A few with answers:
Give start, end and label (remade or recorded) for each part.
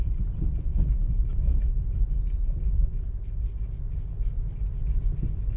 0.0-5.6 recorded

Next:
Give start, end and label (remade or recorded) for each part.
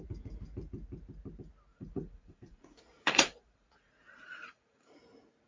0.0-1.7 recorded; 1.7-5.0 remade; 5.0-5.5 recorded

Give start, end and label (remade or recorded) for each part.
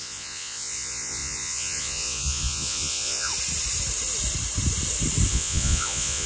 0.0-3.3 remade; 3.3-5.3 recorded; 5.3-6.3 remade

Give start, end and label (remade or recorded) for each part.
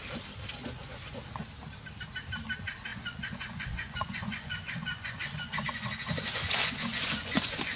0.0-0.6 recorded; 0.6-1.2 remade; 1.2-2.9 recorded; 2.9-7.8 remade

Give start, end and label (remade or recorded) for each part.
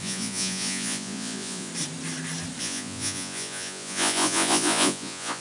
0.0-1.7 remade; 1.7-2.6 recorded; 2.6-5.4 remade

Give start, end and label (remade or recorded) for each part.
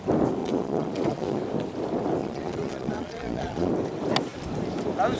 0.0-0.4 recorded; 0.4-1.4 remade; 1.4-2.2 recorded; 2.2-3.7 remade; 3.7-5.2 recorded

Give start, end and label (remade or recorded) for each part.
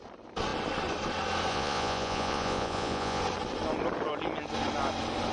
0.0-1.5 recorded; 1.5-3.2 remade; 3.2-5.3 recorded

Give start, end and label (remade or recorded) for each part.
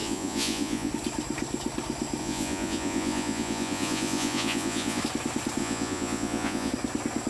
0.0-0.9 remade; 0.9-2.2 recorded; 2.2-5.0 remade; 5.0-5.6 recorded; 5.6-6.7 remade; 6.7-7.3 recorded